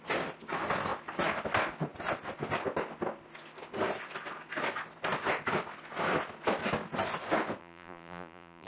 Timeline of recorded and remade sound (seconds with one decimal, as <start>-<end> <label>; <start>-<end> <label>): 0.0-7.6 recorded; 7.6-8.7 remade